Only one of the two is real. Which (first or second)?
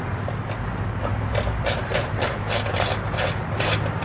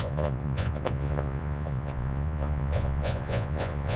first